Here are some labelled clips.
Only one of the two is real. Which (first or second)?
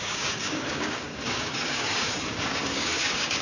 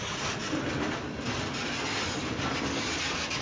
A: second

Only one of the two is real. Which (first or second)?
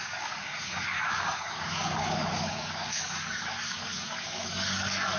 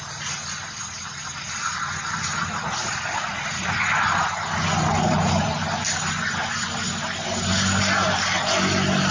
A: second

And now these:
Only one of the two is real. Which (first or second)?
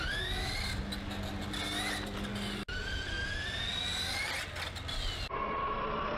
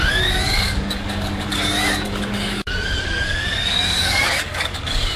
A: first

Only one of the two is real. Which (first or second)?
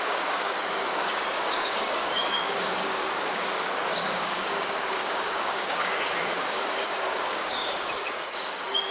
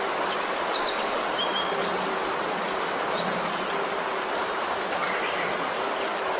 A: second